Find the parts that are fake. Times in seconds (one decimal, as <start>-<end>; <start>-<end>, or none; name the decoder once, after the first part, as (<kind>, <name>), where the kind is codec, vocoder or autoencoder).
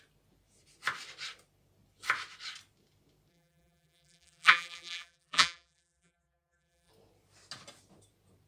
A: 3.3-6.9 (vocoder, BigVGAN v2)